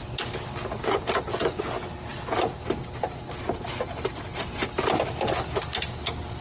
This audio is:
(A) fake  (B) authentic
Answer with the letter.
B